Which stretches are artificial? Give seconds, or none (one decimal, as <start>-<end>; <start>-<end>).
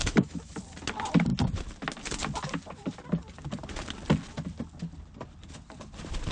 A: 0.0-0.6